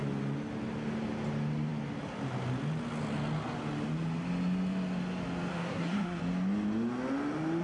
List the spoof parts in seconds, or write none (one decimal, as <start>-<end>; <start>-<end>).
5.5-6.2